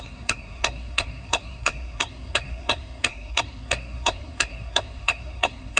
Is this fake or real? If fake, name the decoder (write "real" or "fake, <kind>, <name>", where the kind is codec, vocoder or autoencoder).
fake, codec, SNAC